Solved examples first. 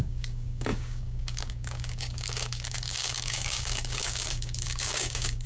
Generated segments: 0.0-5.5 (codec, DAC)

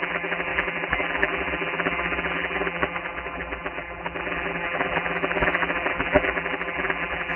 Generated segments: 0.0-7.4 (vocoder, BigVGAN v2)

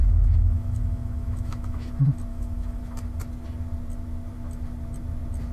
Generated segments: 0.0-1.9 (autoencoder, DAC-VAE); 2.3-2.8

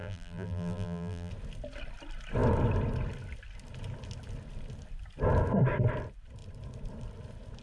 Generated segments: 0.0-1.3 (vocoder, BigVGAN v2)

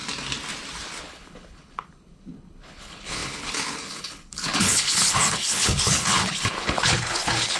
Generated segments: 1.0-7.6 (codec, HILCodec)

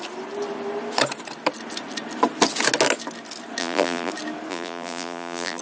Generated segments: 3.6-4.1 (vocoder, BigVGAN v2); 4.5-5.6

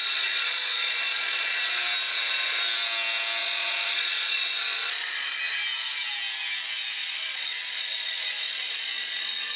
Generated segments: 0.0-1.6 (vocoder, Vocos); 3.4-5.4; 7.0-9.6

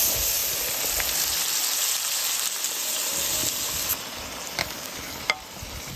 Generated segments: 4.6-5.2 (codec, DAC)